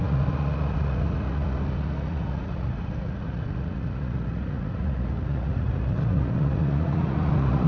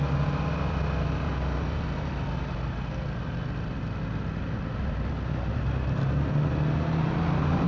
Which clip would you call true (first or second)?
second